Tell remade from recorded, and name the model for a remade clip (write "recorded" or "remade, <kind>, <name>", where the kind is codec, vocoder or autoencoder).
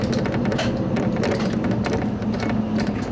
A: recorded